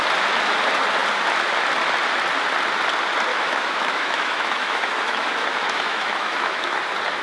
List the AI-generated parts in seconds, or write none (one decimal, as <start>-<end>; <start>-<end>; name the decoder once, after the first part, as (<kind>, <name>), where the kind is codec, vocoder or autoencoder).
3.3-6.8 (autoencoder, DAC-VAE)